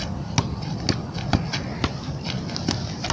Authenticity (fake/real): real